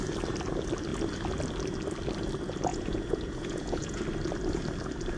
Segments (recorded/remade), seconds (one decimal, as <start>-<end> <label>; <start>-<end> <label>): 0.0-2.7 recorded; 2.7-4.0 remade; 4.0-5.2 recorded